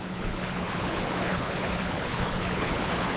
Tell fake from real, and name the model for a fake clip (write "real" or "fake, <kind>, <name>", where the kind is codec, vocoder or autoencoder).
fake, codec, HILCodec